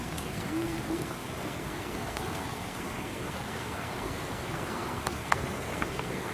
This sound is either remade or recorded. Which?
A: remade